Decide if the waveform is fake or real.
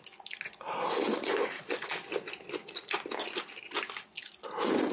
real